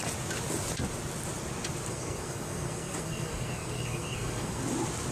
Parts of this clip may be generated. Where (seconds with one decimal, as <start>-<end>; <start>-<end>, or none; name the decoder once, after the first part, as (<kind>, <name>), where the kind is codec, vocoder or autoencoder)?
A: 1.9-4.6 (codec, SNAC)